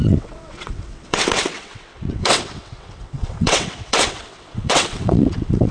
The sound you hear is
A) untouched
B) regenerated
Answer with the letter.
B